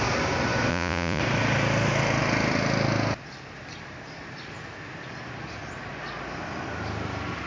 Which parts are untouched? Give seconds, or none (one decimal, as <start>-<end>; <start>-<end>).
0.0-0.7; 1.2-7.5